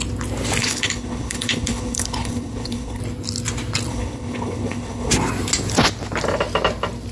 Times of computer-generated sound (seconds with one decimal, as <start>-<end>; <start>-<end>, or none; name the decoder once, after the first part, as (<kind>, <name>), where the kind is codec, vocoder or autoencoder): 0.6-3.0 (codec, HILCodec); 3.9-5.1